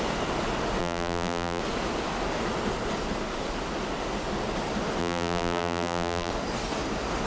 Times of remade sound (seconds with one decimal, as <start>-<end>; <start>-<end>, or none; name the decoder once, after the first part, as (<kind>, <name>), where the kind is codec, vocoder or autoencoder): 0.8-1.6 (vocoder, BigVGAN v2); 5.0-6.3